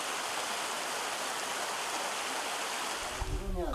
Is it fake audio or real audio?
real